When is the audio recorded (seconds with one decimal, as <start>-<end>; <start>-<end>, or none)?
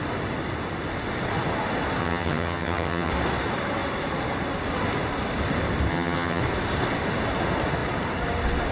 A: 0.0-2.0; 3.1-5.9; 6.4-8.7